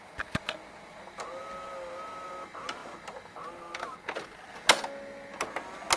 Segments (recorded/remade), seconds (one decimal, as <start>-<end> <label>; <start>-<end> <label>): 0.0-6.0 recorded